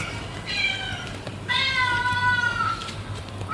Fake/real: real